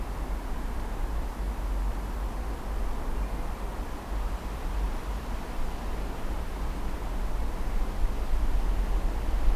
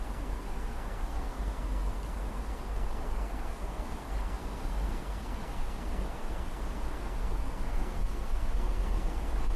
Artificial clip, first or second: second